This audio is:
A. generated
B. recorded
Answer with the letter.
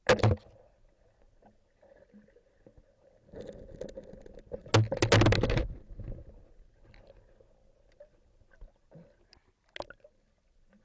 B